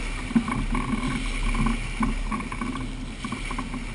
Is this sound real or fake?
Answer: real